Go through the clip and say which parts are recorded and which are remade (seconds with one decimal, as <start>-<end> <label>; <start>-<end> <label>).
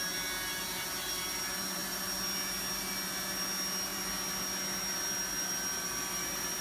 0.0-6.6 recorded